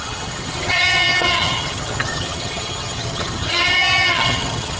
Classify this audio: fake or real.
fake